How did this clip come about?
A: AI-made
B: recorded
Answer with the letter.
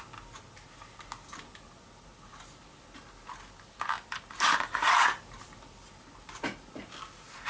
B